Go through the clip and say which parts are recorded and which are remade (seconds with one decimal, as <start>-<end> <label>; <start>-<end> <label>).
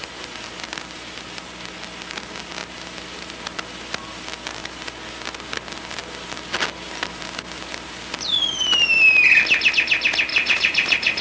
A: 0.0-10.3 recorded; 10.3-11.2 remade